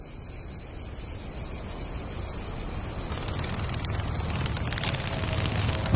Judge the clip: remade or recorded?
recorded